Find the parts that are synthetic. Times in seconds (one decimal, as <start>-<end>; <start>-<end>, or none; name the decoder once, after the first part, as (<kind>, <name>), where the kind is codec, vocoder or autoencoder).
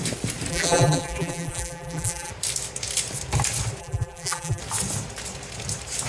0.5-2.3 (vocoder, BigVGAN v2); 3.8-4.6